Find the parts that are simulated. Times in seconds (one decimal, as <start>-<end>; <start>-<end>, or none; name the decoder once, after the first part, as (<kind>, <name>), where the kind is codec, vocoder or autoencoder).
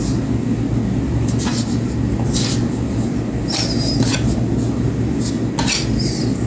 none